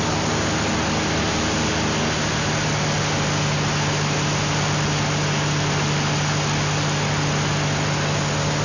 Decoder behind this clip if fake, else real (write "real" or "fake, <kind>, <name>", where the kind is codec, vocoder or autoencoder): real